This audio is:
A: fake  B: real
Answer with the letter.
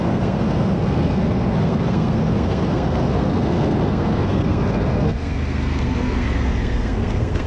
A